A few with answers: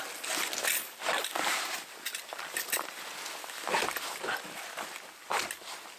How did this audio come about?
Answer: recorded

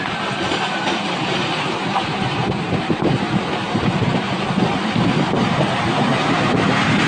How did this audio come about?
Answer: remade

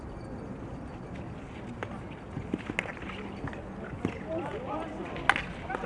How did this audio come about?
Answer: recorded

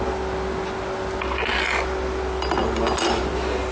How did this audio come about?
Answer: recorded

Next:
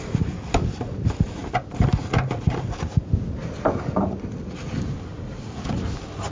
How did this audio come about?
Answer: recorded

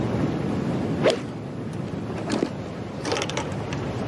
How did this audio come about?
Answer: recorded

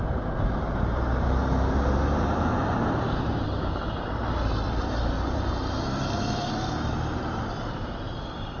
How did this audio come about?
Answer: remade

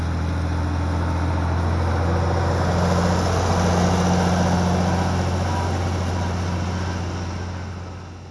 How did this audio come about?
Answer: recorded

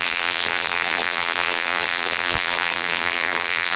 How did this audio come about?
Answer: remade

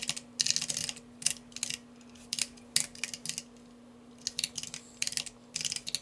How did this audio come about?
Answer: recorded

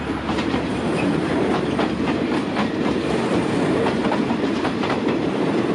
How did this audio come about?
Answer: remade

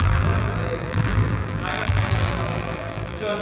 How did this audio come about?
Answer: remade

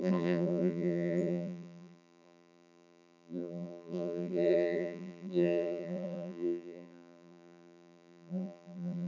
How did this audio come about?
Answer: remade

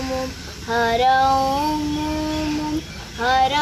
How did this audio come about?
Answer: recorded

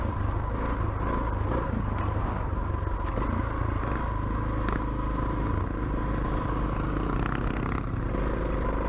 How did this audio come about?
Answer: recorded